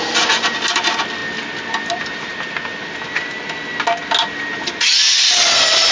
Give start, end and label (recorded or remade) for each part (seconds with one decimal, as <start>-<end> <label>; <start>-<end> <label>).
0.0-1.2 remade; 1.2-1.9 recorded; 1.9-2.3 remade; 2.3-5.9 recorded